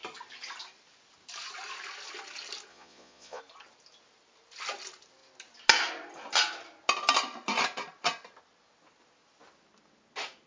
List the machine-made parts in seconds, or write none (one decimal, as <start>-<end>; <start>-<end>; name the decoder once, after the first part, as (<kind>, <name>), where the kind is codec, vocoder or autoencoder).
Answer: 2.7-3.4 (vocoder, Vocos)